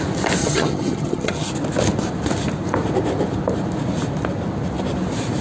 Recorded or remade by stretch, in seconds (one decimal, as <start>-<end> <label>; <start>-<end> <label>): 0.0-0.4 recorded; 0.4-1.5 remade; 1.5-5.4 recorded

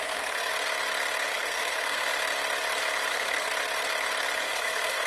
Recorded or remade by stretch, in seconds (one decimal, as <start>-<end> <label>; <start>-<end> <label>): 0.0-0.5 remade; 0.5-1.3 recorded; 1.3-2.1 remade; 2.1-3.1 recorded; 3.1-3.5 remade; 3.5-4.4 recorded; 4.4-5.1 remade

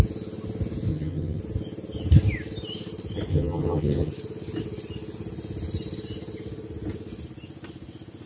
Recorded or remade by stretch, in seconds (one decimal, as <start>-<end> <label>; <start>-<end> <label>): 0.0-0.9 recorded; 0.9-1.4 remade; 1.4-3.3 recorded; 3.3-4.1 remade; 4.1-8.3 recorded

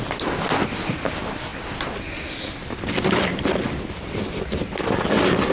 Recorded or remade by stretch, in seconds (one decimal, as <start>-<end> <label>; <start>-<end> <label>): 0.0-5.5 recorded

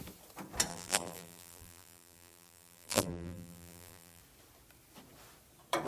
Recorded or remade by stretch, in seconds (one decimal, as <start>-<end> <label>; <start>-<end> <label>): 0.0-0.7 recorded; 0.7-4.2 remade; 4.2-5.9 recorded

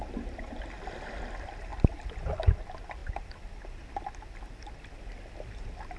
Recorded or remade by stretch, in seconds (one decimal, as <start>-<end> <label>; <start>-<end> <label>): 0.0-6.0 recorded

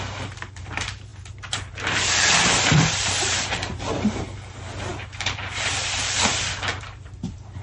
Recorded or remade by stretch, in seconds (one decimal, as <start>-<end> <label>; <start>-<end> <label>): 0.0-6.3 remade; 6.3-6.8 recorded; 6.8-7.6 remade